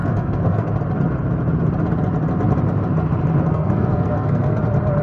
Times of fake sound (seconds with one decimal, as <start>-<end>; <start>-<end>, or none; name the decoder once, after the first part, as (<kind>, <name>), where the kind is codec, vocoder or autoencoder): 0.0-0.7 (codec, SNAC); 3.5-4.6